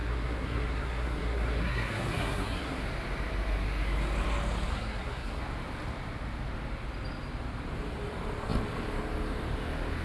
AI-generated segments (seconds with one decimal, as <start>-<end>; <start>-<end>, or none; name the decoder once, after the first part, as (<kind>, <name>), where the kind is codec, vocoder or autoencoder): 0.0-2.8 (codec, SNAC); 4.7-5.4